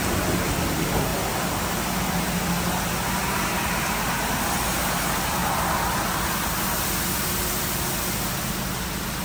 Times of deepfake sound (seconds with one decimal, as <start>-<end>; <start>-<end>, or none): none